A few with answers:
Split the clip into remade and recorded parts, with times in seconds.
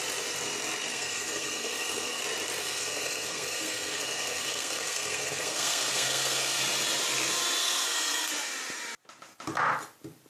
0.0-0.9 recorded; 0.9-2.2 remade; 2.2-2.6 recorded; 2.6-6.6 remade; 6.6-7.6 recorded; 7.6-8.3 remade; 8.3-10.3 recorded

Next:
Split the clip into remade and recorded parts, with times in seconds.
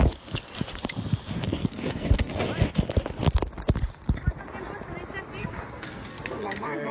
0.0-1.5 recorded; 1.5-2.5 remade; 2.5-5.4 recorded; 5.4-6.9 remade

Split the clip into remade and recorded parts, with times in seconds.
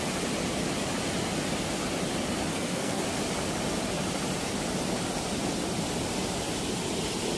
0.0-2.5 recorded; 2.5-3.0 remade; 3.0-7.4 recorded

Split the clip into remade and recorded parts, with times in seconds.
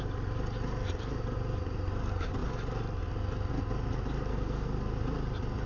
0.0-4.3 recorded; 4.3-4.8 remade; 4.8-5.7 recorded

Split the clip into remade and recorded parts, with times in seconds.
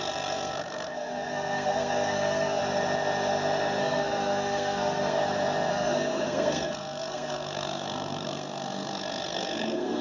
0.0-2.6 remade; 2.6-3.8 recorded; 3.8-5.2 remade; 5.2-5.7 recorded; 5.7-10.0 remade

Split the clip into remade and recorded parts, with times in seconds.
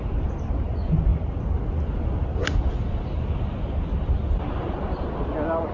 0.0-5.7 recorded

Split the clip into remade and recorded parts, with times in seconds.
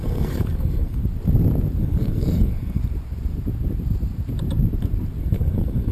0.0-1.0 remade; 1.0-1.8 recorded; 1.8-2.8 remade; 2.8-5.2 recorded; 5.2-5.9 remade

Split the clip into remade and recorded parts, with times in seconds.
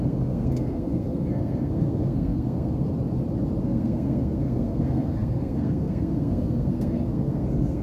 0.0-2.9 remade; 2.9-3.6 recorded; 3.6-7.8 remade